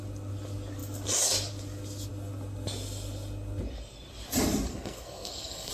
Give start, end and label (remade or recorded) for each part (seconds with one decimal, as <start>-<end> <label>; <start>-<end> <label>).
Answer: 0.0-4.7 recorded; 4.7-5.7 remade